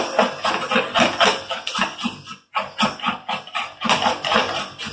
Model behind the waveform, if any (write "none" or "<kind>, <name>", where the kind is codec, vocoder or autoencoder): none